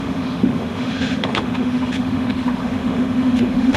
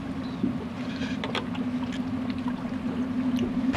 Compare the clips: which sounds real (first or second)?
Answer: second